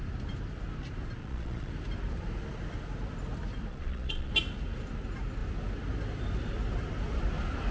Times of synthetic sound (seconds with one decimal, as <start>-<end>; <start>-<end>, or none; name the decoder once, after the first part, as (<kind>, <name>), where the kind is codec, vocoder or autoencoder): 1.2-1.7 (vocoder, Vocos); 3.7-4.3

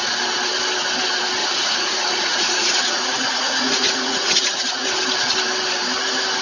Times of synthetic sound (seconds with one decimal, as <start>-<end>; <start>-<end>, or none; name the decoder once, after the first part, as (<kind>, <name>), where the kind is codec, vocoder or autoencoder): 1.4-5.0 (vocoder, Vocos)

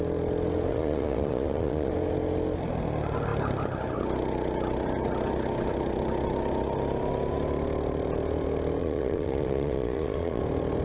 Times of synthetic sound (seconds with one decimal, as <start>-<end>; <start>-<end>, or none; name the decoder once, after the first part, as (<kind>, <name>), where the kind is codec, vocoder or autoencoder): 0.7-1.9 (vocoder, Vocos); 8.8-10.4

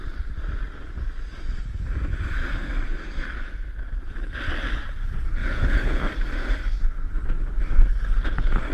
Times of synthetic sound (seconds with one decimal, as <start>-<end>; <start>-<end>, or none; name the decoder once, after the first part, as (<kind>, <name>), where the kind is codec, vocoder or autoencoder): 5.4-6.0 (vocoder, Vocos)

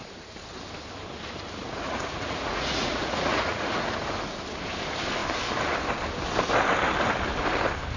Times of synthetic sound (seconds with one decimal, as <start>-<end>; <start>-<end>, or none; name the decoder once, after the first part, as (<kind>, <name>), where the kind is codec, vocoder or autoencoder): 1.6-4.0 (vocoder, Vocos)